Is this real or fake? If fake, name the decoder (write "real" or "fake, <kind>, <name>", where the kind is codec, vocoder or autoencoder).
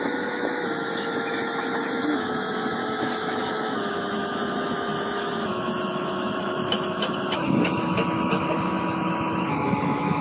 fake, autoencoder, DAC-VAE